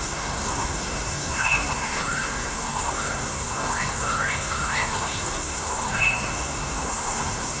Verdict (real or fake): fake